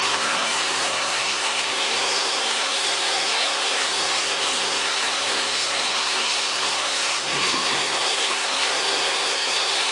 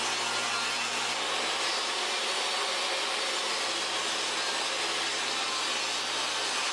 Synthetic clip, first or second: first